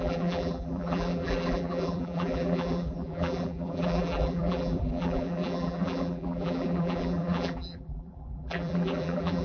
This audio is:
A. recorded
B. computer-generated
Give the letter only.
B